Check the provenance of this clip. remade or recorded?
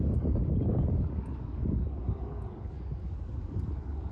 remade